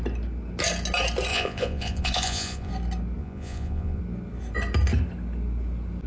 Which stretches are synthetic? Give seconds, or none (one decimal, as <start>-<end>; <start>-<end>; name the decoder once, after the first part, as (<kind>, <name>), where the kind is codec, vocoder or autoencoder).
1.3-2.7 (vocoder, Vocos); 3.2-4.0